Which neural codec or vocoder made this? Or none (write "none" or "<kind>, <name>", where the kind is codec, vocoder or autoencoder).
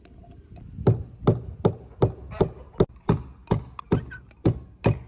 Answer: none